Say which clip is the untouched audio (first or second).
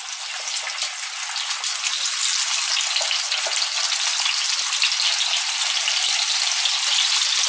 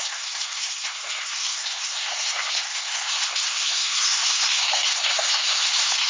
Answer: first